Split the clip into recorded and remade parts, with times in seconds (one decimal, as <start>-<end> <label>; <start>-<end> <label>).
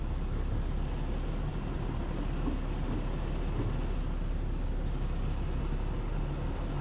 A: 0.0-6.8 recorded